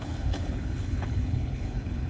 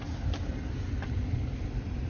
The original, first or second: second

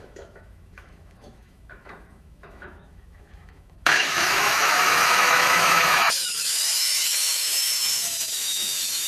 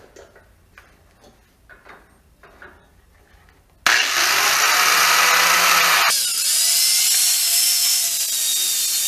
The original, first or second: second